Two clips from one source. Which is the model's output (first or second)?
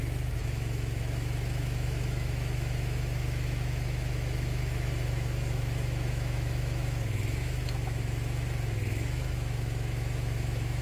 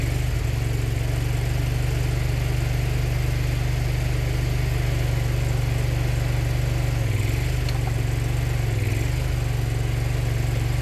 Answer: first